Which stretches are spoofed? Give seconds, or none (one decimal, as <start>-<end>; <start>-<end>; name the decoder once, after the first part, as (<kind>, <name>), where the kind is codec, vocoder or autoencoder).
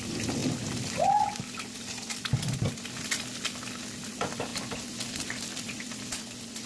none